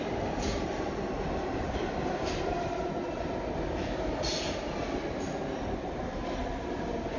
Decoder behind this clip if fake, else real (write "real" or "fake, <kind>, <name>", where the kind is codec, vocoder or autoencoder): real